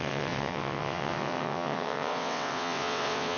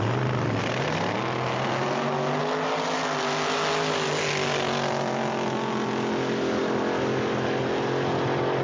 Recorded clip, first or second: second